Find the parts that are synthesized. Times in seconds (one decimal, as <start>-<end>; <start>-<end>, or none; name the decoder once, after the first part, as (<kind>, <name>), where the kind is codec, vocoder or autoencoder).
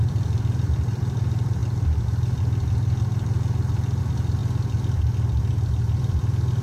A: 0.0-1.6 (vocoder, BigVGAN v2); 4.0-4.4; 5.5-6.6